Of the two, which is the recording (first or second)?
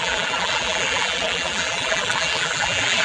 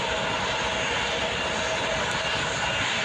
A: second